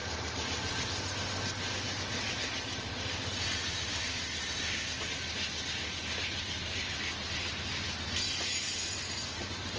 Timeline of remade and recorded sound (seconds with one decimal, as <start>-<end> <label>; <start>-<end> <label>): 0.0-9.8 recorded